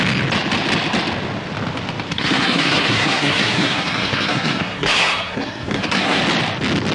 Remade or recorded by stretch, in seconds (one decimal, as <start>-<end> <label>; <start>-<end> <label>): 0.0-2.1 recorded; 2.1-6.2 remade; 6.2-6.9 recorded